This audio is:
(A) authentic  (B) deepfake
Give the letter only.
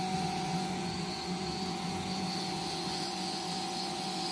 B